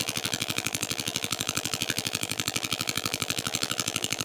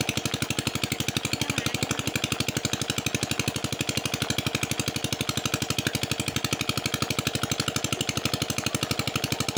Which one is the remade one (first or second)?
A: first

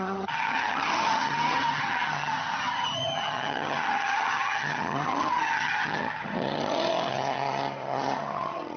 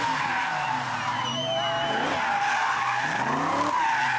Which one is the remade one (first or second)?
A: first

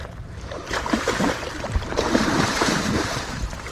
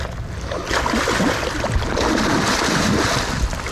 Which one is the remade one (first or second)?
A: first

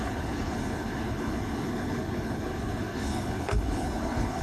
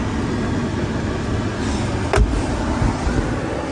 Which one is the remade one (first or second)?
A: first